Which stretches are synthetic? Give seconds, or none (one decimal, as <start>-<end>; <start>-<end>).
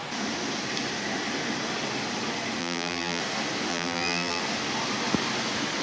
2.6-3.2; 3.7-4.4